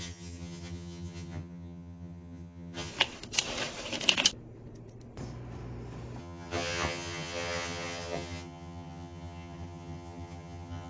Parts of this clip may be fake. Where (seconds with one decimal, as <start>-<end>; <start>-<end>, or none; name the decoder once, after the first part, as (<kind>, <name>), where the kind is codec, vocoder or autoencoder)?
0.0-2.9 (vocoder, HiFi-GAN); 6.2-10.9